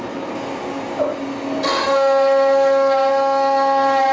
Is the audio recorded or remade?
recorded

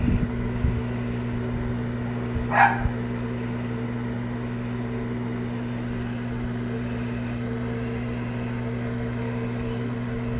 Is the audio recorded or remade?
recorded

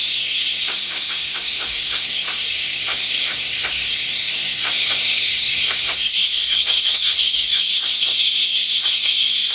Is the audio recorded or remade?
remade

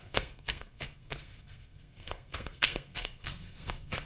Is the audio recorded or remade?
remade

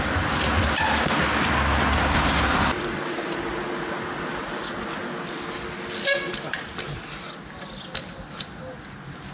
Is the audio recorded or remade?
recorded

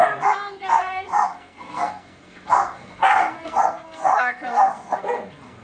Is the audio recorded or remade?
remade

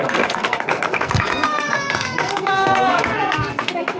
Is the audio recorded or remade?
remade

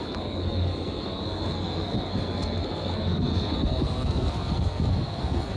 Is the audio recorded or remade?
remade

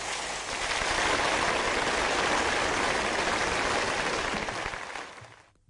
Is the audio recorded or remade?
recorded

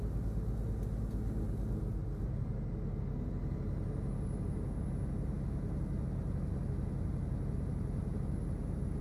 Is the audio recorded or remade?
recorded